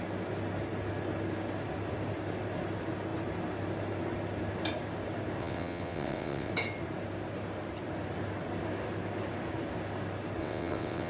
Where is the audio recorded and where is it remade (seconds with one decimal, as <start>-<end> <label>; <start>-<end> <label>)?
0.0-5.4 recorded; 5.4-6.5 remade; 6.5-10.4 recorded; 10.4-11.1 remade